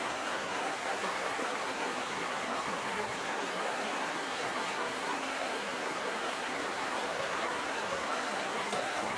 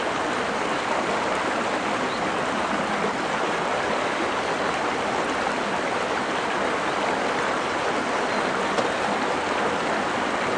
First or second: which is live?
second